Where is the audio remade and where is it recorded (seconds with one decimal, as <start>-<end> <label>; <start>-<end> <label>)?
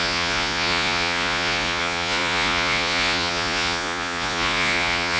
0.0-5.2 remade